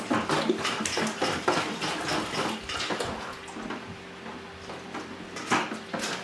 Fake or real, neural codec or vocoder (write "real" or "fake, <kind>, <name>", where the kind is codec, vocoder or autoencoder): real